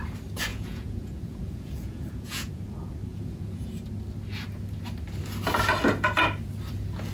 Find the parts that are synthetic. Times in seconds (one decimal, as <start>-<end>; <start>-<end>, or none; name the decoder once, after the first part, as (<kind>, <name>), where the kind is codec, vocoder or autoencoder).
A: 0.5-2.6 (vocoder, Vocos); 3.1-3.7